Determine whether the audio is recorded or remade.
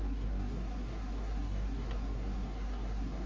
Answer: remade